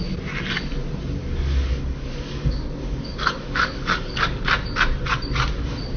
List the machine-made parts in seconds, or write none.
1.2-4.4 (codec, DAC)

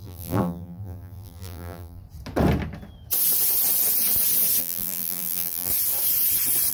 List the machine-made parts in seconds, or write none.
0.0-2.0 (vocoder, BigVGAN v2); 4.6-5.7

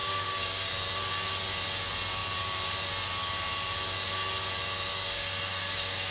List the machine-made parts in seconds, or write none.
0.0-0.7 (codec, DAC); 4.9-6.1

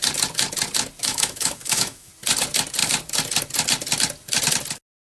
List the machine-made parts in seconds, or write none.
1.0-2.1 (autoencoder, DAC-VAE)